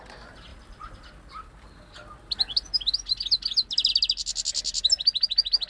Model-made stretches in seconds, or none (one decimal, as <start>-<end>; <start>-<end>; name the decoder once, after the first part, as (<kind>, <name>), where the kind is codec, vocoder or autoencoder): none